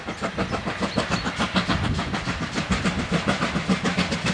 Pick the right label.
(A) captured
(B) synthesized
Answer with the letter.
A